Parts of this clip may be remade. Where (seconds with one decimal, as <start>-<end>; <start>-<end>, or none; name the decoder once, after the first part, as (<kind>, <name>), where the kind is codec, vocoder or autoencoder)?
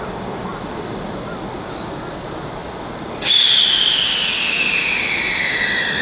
0.5-1.2 (vocoder, BigVGAN v2); 2.6-6.0